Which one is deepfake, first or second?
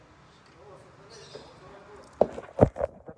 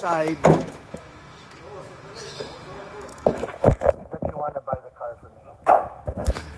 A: second